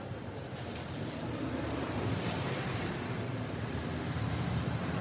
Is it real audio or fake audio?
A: fake